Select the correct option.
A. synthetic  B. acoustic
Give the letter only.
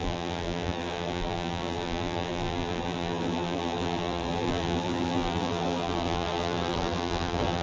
A